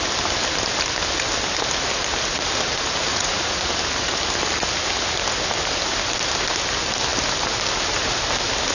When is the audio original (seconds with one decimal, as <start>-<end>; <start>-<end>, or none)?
0.0-3.1; 3.7-8.7

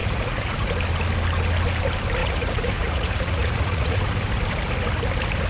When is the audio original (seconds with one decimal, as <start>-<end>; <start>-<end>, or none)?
0.7-2.2; 4.0-5.5

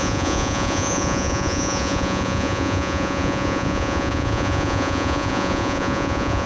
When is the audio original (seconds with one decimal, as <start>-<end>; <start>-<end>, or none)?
none

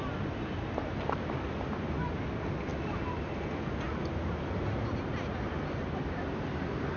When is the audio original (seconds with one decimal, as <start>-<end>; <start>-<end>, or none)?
0.0-7.0

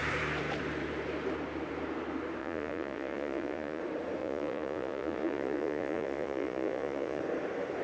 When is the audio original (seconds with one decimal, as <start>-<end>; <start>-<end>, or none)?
0.0-2.4; 3.8-4.2; 7.2-7.8

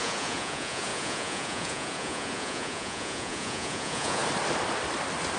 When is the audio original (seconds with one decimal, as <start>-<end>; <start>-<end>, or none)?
4.2-5.4

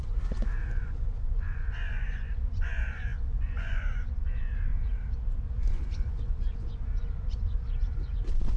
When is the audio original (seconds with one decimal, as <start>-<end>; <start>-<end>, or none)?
4.7-5.6